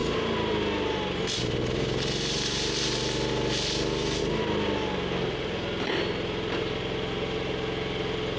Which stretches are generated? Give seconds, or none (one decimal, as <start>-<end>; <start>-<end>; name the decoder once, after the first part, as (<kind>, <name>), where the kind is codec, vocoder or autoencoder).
none